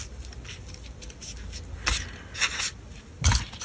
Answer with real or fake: real